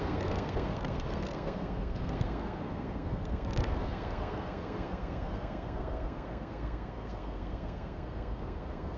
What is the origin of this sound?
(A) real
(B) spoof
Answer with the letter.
B